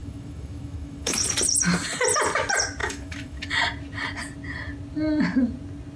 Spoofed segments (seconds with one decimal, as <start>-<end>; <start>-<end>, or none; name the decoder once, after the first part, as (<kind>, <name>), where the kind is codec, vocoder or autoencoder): 0.0-1.2 (autoencoder, DAC-VAE); 2.8-3.5